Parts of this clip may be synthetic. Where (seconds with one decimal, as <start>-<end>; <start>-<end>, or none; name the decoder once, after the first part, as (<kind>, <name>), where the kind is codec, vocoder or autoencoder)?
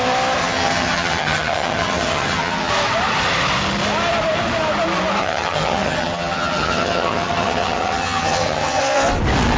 0.4-2.7 (vocoder, HiFi-GAN); 5.2-8.8